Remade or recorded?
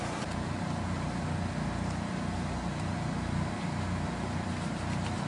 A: remade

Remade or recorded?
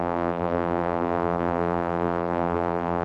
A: remade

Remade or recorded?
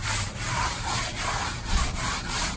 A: remade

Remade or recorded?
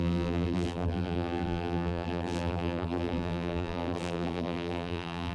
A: remade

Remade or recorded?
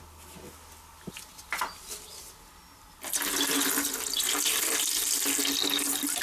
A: recorded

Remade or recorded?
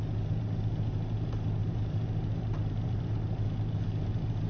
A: remade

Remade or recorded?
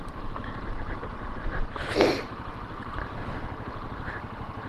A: remade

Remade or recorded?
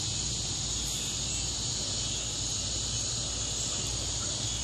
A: remade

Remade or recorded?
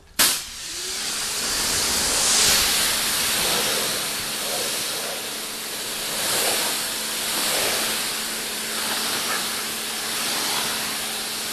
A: recorded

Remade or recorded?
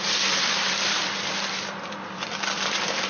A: remade